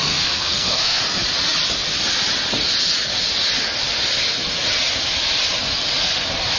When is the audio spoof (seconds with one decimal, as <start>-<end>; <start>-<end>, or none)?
0.0-1.0